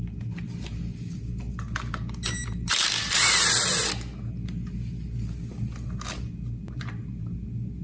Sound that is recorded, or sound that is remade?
recorded